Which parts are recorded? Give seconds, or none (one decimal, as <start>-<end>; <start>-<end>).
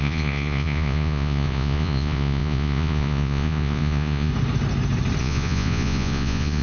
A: 4.3-5.2